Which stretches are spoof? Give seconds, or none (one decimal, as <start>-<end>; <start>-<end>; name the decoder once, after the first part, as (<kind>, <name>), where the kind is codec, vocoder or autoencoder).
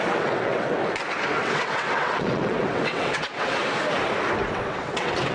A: 0.0-0.8 (vocoder, WaveNeXt); 1.3-3.6; 4.5-5.3